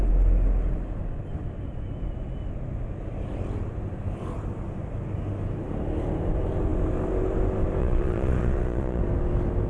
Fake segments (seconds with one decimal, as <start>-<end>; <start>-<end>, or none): 7.8-9.0